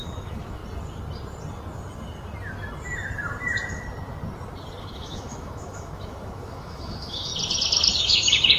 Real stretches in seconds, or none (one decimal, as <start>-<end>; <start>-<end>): 0.6-4.8; 7.3-8.0